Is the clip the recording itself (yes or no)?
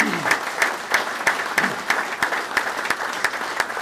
yes